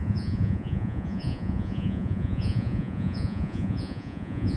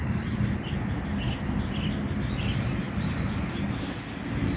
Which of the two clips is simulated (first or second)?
first